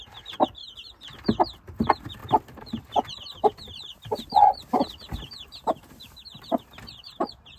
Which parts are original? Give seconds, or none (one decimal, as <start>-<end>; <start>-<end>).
0.6-1.2